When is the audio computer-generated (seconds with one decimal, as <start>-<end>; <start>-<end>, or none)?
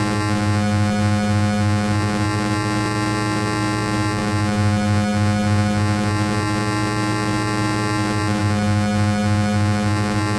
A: none